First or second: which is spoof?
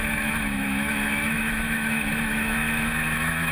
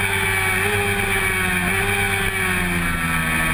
first